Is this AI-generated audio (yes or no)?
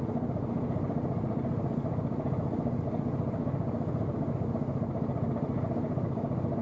no